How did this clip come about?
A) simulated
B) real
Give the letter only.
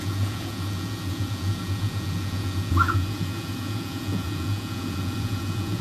A